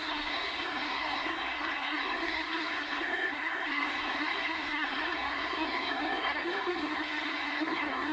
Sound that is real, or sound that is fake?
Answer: fake